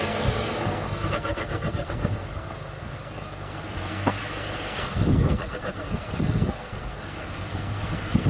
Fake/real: fake